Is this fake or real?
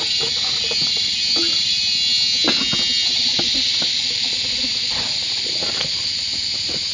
real